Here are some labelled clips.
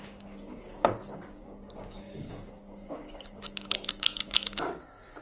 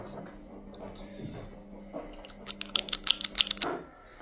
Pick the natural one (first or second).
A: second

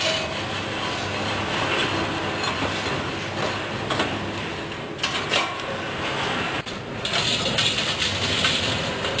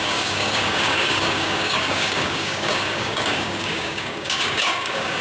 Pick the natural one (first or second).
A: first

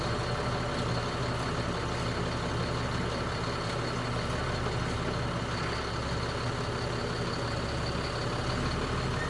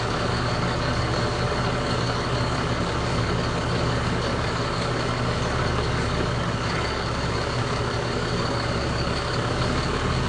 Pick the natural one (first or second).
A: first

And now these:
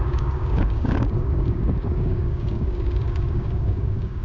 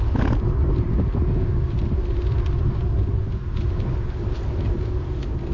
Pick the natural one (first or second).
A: second